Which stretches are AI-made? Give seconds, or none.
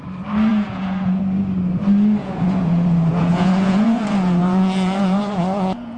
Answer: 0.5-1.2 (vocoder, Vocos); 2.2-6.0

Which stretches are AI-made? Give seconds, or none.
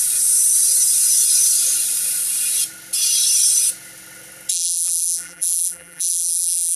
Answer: 4.5-6.8 (vocoder, BigVGAN v2)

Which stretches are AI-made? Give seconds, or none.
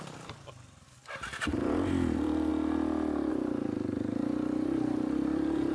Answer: 0.0-2.5 (vocoder, BigVGAN v2); 3.3-5.7